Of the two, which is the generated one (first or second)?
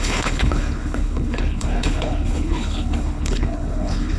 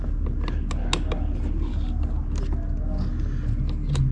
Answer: first